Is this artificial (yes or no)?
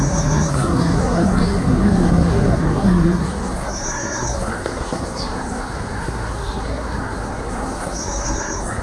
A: yes